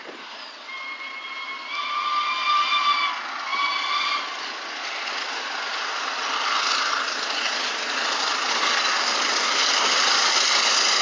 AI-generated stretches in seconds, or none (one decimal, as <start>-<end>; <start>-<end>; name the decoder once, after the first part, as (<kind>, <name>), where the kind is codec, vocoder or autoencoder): none